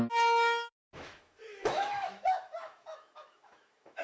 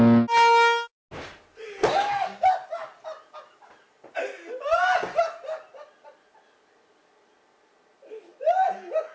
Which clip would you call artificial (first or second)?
first